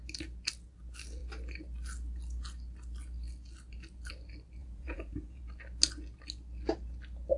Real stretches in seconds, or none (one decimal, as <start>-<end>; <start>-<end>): 0.0-4.6; 5.4-7.4